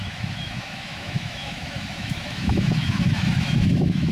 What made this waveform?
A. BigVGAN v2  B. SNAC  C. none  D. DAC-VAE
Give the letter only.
D